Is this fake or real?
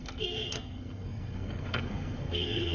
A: fake